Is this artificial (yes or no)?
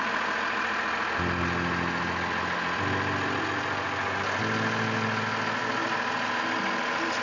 no